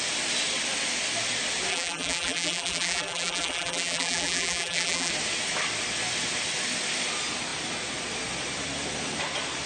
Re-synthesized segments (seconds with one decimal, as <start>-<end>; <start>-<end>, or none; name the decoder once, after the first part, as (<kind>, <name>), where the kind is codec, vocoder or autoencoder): 1.7-5.1 (vocoder, BigVGAN v2)